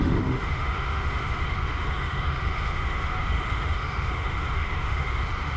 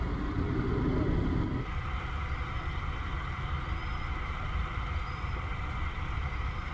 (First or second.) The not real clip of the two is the first